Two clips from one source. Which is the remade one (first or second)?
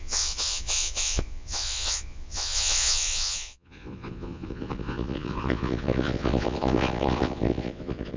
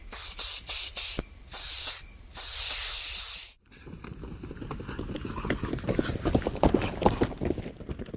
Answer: first